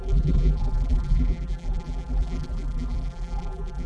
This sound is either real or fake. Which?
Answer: fake